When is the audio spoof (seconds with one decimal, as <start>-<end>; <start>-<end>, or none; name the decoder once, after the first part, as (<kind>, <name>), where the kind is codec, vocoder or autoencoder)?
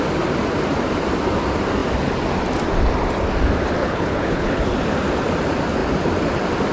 3.8-4.6 (codec, HILCodec)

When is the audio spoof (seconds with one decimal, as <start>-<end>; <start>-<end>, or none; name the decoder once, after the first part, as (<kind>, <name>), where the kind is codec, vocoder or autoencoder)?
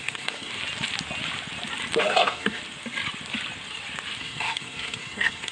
0.0-0.5 (codec, SNAC); 2.0-2.6; 4.2-5.5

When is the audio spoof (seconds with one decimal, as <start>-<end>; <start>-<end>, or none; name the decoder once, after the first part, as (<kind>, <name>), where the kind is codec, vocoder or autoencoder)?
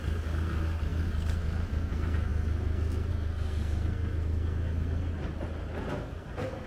0.0-5.1 (codec, SNAC); 5.9-6.7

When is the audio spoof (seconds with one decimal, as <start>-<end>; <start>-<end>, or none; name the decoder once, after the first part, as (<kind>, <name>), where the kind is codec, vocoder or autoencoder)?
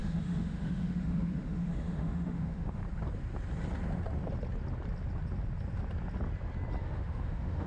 0.0-2.8 (autoencoder, DAC-VAE); 6.8-7.7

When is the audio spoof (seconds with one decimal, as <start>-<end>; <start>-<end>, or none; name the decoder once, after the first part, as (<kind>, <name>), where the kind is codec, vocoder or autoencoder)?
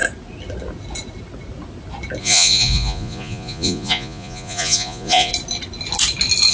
2.2-5.3 (vocoder, Vocos)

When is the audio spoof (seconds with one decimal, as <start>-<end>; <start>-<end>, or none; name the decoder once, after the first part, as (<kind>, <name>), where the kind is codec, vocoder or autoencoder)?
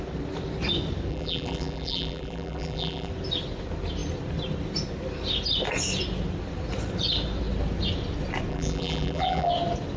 1.1-3.1 (vocoder, BigVGAN v2); 8.5-9.5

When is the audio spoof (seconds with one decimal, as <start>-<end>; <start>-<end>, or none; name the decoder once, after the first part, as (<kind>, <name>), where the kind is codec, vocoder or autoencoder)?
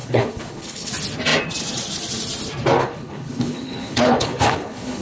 0.0-0.9 (codec, HILCodec); 2.8-5.0